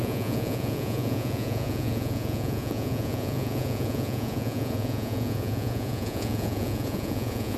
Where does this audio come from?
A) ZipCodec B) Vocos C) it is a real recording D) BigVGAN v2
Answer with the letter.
B